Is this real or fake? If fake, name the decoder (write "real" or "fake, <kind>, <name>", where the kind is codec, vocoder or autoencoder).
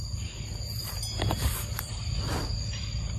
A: real